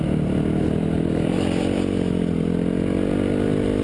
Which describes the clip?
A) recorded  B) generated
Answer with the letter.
A